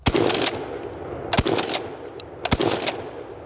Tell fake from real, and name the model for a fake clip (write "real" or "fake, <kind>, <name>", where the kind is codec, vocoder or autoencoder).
real